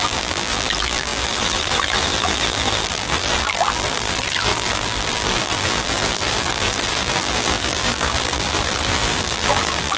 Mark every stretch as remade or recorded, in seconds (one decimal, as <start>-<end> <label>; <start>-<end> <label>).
0.0-10.0 remade